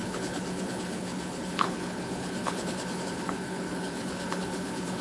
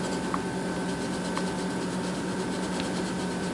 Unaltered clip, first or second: second